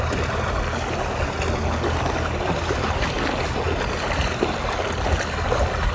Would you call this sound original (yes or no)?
yes